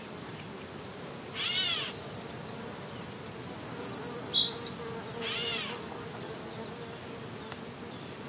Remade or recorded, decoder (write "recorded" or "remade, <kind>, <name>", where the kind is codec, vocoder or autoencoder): recorded